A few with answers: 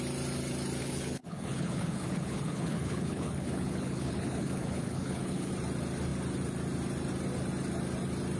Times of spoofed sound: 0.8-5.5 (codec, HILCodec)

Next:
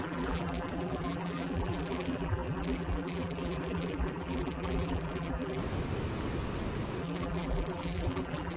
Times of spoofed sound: 0.0-5.6 (vocoder, BigVGAN v2); 7.0-8.6

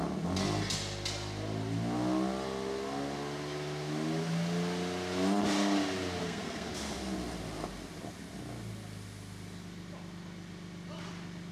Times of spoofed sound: 6.2-6.7 (codec, SNAC)

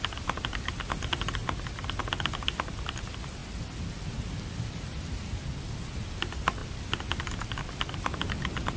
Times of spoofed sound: none

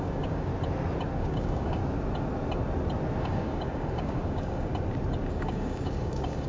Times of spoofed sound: 0.0-0.5 (codec, DAC); 1.2-1.8; 3.2-4.7; 5.3-6.5

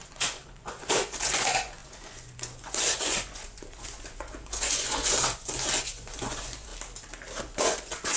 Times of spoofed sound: 0.0-6.7 (vocoder, Vocos); 7.4-8.2

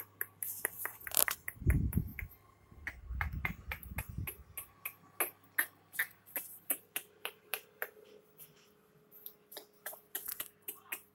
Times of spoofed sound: 0.0-2.1 (vocoder, BigVGAN v2); 6.8-11.1

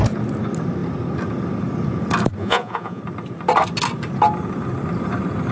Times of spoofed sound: 2.4-3.0 (vocoder, Vocos)